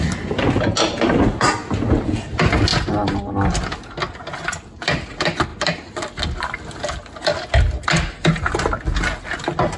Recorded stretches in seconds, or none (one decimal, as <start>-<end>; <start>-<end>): 0.0-9.8